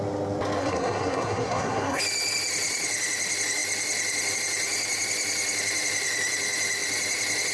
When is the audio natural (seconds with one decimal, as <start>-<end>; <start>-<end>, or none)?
0.0-0.6; 2.0-7.5